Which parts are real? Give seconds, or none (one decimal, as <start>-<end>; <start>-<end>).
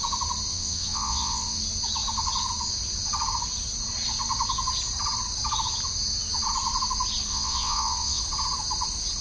0.0-0.5; 1.6-7.3; 8.2-9.2